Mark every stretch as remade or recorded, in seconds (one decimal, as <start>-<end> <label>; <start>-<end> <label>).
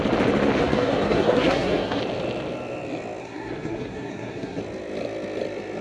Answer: 0.0-0.6 recorded; 0.6-2.0 remade; 2.0-3.2 recorded; 3.2-4.6 remade; 4.6-5.8 recorded